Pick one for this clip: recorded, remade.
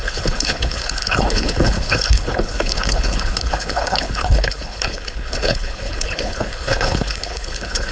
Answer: remade